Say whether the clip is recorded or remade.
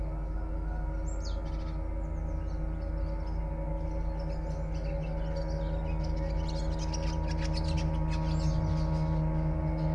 recorded